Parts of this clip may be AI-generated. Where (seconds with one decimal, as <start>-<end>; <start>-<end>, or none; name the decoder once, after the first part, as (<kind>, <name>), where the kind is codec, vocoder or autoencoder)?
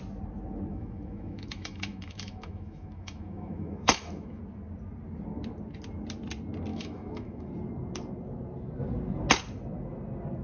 0.7-4.4 (autoencoder, DAC-VAE); 6.7-7.5